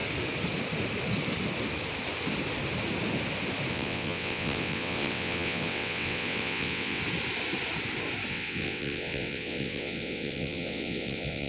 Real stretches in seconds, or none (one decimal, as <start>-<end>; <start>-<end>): 0.0-3.7; 7.0-8.3